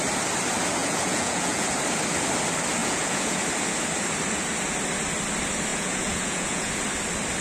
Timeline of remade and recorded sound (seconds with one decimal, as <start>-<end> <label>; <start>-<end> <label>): 0.0-0.8 recorded; 0.8-1.7 remade; 1.7-2.8 recorded; 2.8-3.4 remade; 3.4-5.7 recorded; 5.7-6.7 remade; 6.7-7.4 recorded